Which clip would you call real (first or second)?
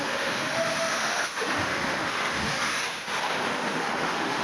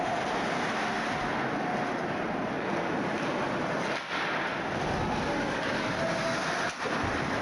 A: second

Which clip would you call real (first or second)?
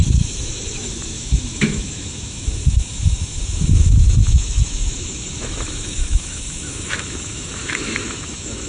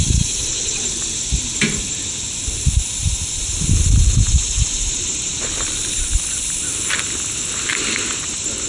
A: second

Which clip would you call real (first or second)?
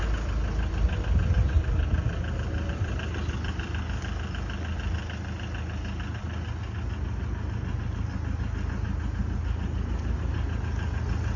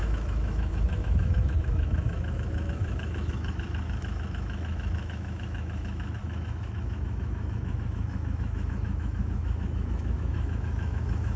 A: first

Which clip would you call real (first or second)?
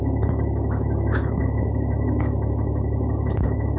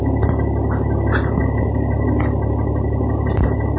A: second